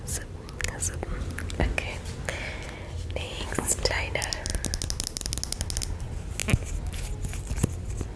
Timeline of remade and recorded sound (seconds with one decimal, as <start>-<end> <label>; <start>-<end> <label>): 0.0-8.2 recorded